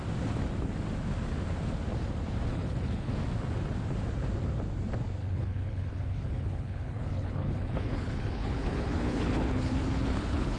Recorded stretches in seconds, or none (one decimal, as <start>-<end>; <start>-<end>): 0.0-2.5; 3.1-5.2